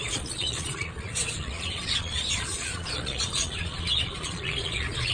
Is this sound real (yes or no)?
no